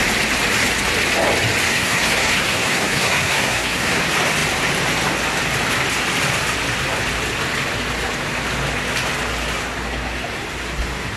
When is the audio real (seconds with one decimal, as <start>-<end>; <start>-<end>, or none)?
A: 0.0-1.7; 4.0-11.2